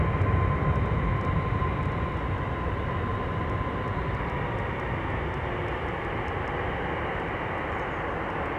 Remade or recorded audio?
recorded